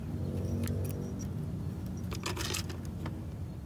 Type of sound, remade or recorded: recorded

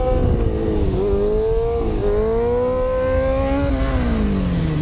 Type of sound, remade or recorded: recorded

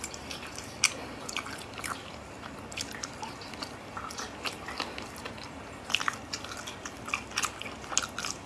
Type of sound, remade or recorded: recorded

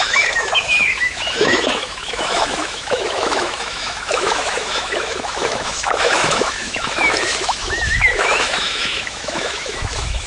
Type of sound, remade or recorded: remade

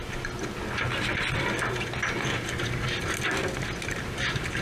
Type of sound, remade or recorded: recorded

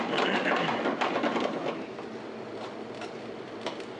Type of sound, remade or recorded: recorded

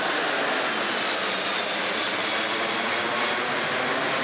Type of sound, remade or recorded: recorded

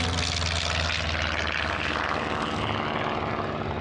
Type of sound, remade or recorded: recorded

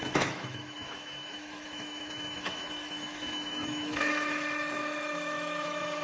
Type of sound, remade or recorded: remade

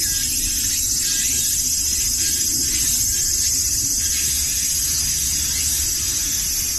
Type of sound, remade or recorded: recorded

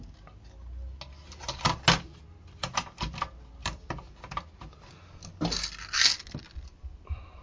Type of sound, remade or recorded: recorded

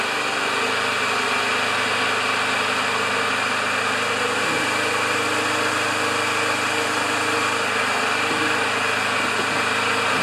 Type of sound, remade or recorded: recorded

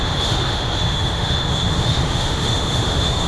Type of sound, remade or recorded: remade